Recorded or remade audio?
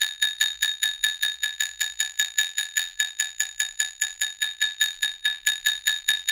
remade